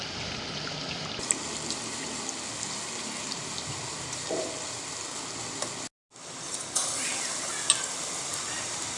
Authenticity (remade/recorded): recorded